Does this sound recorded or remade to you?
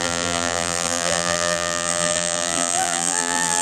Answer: remade